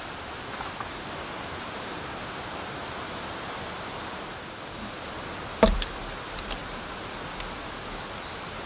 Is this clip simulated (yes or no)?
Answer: yes